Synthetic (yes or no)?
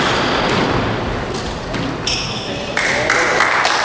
no